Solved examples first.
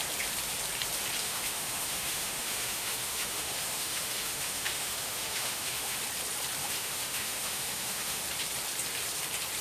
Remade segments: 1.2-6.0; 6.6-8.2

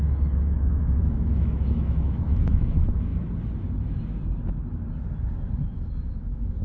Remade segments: 0.0-3.1; 5.5-6.6

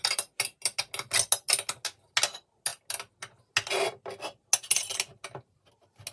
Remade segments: none